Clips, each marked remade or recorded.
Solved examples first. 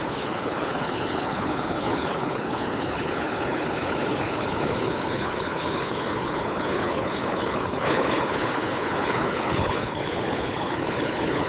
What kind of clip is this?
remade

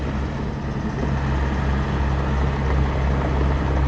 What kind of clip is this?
recorded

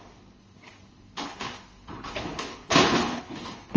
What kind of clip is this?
remade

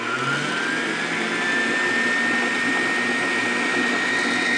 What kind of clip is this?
recorded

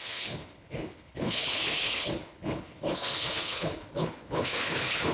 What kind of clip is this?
remade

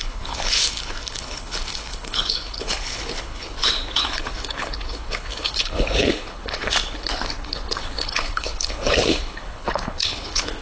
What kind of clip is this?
remade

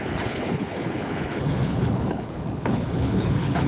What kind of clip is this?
remade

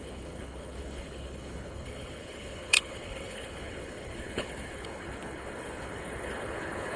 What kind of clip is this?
remade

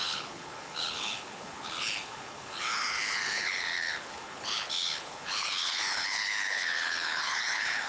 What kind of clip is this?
remade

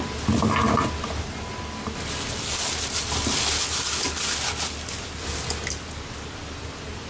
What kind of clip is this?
recorded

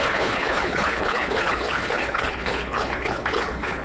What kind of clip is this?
remade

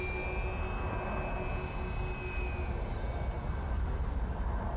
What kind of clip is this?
recorded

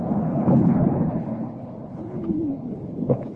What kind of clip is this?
remade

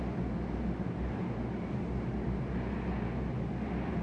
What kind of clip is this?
recorded